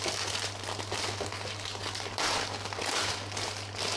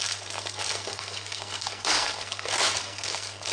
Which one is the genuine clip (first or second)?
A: first